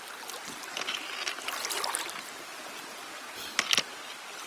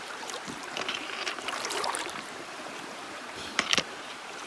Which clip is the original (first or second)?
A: first